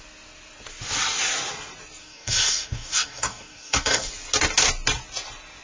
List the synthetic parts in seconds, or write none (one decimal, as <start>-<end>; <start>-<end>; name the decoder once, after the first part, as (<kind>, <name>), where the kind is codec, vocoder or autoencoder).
2.0-4.1 (codec, DAC)